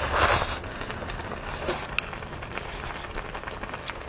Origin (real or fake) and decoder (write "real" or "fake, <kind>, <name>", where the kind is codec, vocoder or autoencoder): real